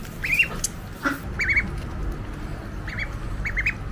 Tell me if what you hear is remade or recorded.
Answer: recorded